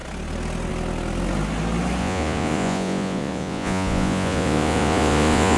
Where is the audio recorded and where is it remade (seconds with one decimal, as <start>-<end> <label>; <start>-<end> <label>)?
0.0-2.0 recorded; 2.0-5.6 remade